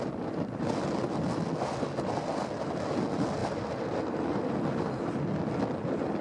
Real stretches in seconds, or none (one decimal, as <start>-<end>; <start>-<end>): 0.0-6.2

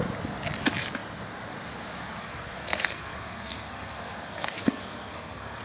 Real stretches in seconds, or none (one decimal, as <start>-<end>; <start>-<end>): 0.0-2.2

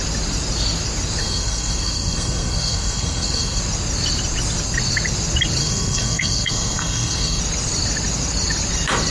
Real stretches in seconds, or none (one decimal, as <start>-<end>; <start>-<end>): 0.0-1.2; 3.6-5.6; 7.4-9.1

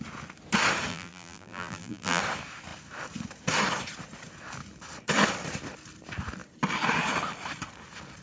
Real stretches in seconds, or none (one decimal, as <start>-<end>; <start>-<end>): 0.0-0.9; 2.2-8.2

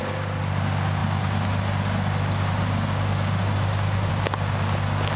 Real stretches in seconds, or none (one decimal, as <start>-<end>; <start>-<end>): 0.0-5.2

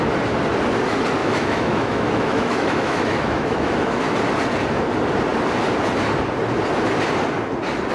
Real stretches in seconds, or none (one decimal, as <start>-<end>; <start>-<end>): 0.0-1.2; 4.0-7.9